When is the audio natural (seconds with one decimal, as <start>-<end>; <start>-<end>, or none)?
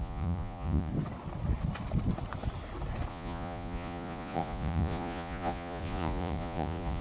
0.9-3.1